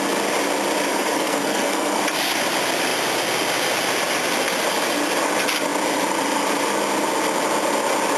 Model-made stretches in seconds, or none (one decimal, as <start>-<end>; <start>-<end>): 0.9-2.0